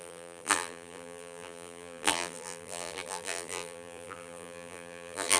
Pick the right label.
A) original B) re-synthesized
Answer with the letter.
B